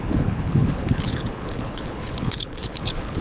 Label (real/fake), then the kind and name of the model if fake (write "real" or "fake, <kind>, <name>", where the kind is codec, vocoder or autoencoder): fake, codec, HILCodec